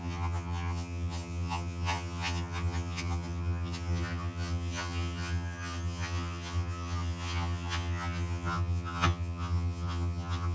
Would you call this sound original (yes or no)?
no